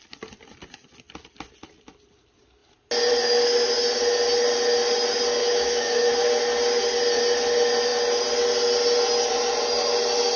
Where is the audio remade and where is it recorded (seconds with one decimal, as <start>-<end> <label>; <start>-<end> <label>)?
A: 0.0-5.4 recorded; 5.4-6.1 remade; 6.1-10.4 recorded